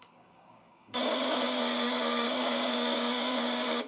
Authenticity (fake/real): fake